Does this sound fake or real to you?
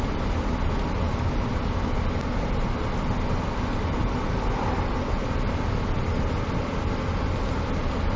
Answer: real